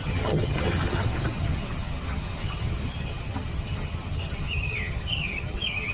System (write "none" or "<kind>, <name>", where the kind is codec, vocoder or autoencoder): vocoder, HiFi-GAN